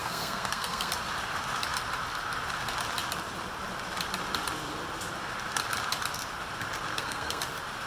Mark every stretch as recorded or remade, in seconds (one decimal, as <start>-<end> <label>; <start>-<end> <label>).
0.0-0.9 remade; 0.9-6.9 recorded; 6.9-7.4 remade; 7.4-7.9 recorded